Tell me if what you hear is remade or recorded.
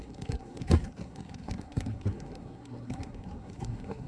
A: remade